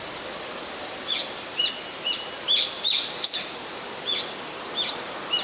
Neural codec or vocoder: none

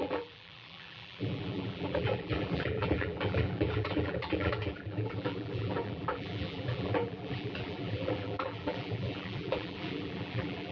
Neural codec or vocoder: vocoder, BigVGAN v2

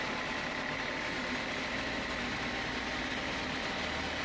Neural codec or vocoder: none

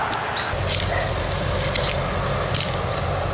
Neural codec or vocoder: none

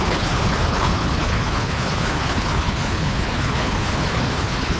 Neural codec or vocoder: codec, HILCodec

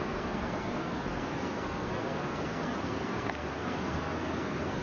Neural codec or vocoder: codec, SNAC